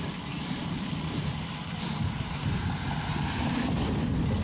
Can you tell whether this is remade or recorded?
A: recorded